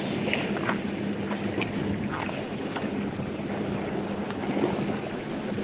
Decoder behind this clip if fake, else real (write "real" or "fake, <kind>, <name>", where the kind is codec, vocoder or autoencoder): real